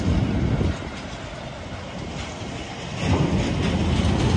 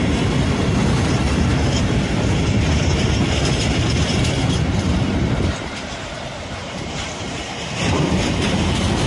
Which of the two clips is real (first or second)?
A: first